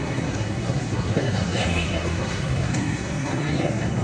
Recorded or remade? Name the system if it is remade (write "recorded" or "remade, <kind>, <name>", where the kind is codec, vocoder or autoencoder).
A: remade, codec, SNAC